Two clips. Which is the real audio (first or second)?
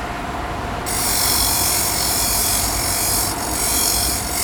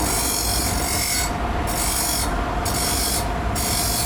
second